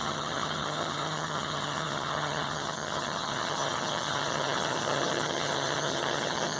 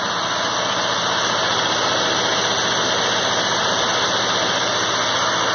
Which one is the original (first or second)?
second